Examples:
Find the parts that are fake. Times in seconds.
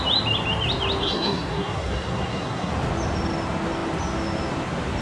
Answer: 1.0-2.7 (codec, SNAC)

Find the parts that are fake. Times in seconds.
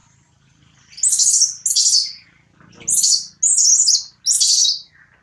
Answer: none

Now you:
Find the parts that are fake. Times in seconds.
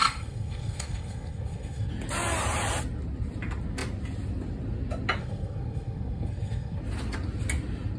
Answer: 0.0-1.9 (codec, SNAC); 5.2-6.8